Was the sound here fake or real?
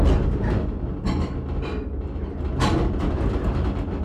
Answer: real